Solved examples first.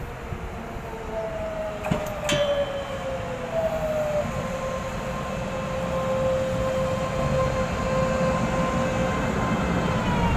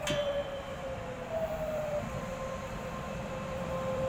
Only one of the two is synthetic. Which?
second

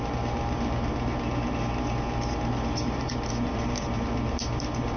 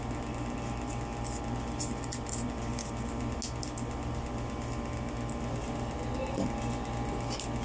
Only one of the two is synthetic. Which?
first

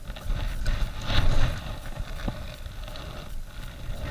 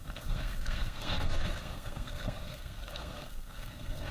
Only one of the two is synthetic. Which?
second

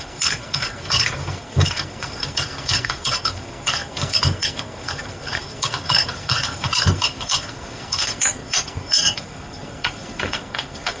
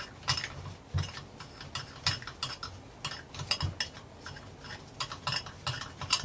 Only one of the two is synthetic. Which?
first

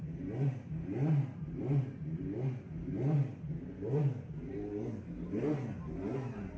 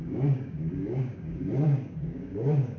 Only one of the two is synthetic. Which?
second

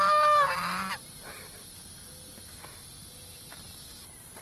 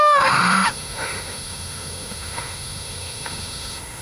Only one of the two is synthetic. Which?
second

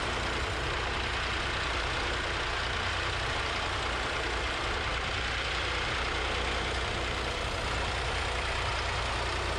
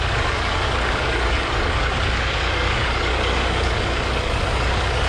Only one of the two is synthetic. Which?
second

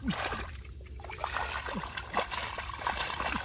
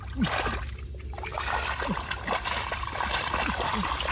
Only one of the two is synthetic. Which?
first